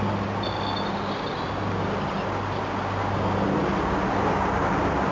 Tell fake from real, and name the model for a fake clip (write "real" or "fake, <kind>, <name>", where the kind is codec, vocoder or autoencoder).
fake, vocoder, BigVGAN v2